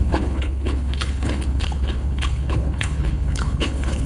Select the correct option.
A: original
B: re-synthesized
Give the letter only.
B